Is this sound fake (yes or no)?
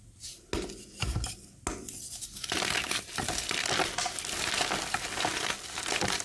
no